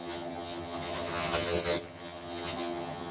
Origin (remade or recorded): remade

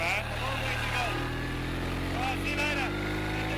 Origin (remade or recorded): recorded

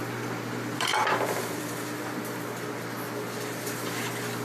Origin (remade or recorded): remade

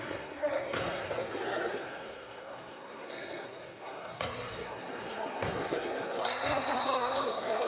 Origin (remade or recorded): remade